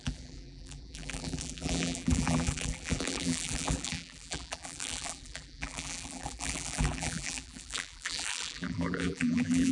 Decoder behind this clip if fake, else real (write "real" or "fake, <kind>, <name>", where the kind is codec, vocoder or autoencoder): fake, vocoder, BigVGAN v2